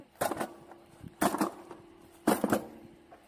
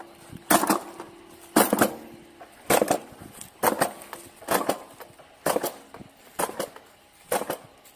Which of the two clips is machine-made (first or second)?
first